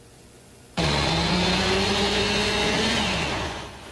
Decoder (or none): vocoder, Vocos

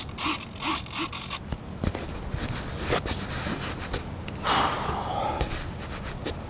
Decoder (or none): none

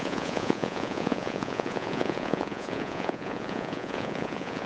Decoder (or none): vocoder, Vocos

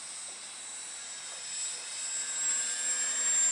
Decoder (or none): none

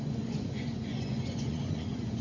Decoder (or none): vocoder, Vocos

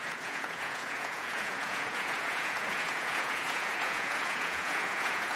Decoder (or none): vocoder, Vocos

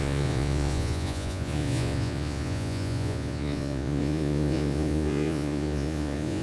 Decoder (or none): vocoder, Vocos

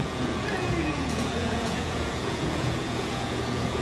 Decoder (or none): vocoder, Vocos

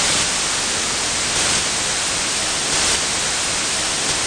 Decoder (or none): none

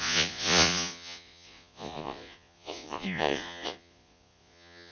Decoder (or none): vocoder, Vocos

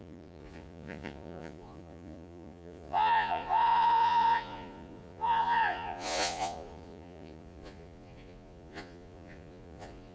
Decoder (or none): vocoder, Vocos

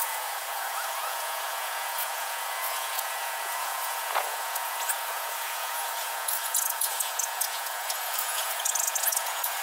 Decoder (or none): vocoder, Vocos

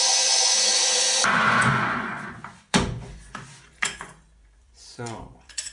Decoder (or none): vocoder, Vocos